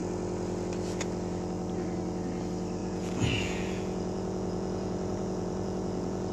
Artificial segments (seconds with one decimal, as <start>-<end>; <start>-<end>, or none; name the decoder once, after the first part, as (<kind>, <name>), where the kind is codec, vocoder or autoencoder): 2.8-6.3 (vocoder, Vocos)